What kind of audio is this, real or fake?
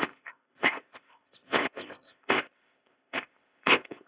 fake